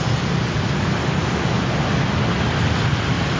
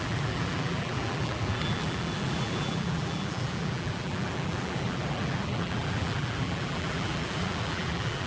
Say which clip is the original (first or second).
first